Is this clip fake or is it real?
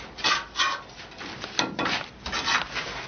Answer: real